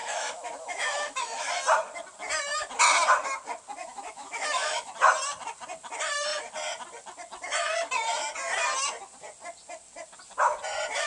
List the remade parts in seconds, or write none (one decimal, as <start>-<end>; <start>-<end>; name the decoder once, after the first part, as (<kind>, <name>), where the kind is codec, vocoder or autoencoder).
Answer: 0.0-1.5 (autoencoder, DAC-VAE); 3.8-4.9

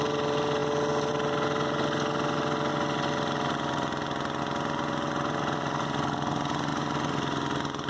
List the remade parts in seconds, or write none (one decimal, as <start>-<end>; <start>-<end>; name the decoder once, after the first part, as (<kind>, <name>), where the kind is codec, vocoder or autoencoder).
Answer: none

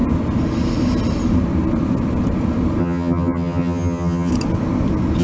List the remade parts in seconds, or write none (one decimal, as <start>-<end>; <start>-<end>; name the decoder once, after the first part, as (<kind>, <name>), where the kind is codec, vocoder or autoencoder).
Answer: 2.8-4.3 (vocoder, HiFi-GAN)

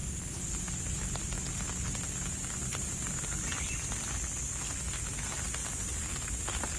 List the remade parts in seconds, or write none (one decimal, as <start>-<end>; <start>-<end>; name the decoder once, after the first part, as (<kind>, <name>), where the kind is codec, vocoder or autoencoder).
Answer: 0.0-3.7 (vocoder, BigVGAN v2)

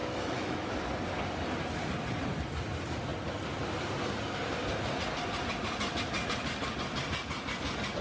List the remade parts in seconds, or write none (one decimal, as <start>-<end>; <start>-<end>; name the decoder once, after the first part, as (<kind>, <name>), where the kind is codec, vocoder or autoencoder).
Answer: 0.0-0.7 (autoencoder, DAC-VAE)

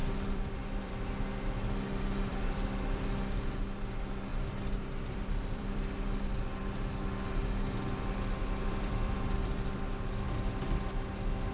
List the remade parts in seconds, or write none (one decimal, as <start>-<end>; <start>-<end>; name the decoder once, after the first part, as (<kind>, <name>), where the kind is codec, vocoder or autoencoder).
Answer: 0.0-1.1 (vocoder, BigVGAN v2); 2.3-3.6; 4.3-6.4; 8.4-9.8

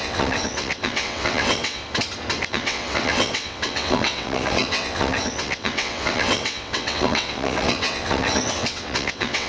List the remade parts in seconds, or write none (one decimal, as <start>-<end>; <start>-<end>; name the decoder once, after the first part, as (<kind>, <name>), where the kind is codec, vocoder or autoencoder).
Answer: 0.0-1.8 (vocoder, WaveNeXt); 2.5-9.5